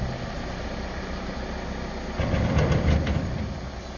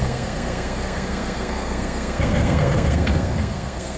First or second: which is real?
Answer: first